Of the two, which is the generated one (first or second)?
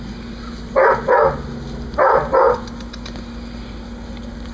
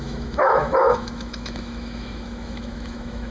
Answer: second